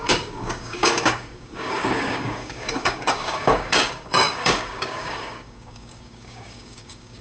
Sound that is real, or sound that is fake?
fake